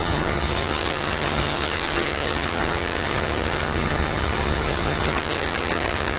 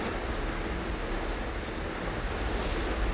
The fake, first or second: first